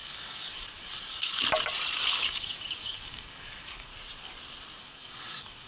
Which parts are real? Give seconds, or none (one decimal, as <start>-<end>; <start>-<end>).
1.4-2.2; 3.9-4.8